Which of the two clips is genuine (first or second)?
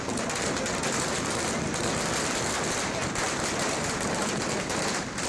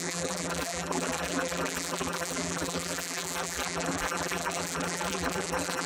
first